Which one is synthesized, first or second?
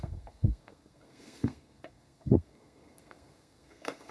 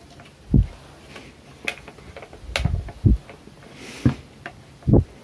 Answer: first